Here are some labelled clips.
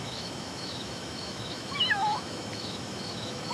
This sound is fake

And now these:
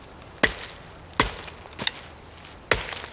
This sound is real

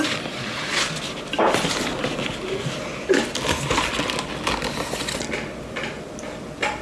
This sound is real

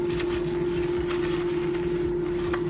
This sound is real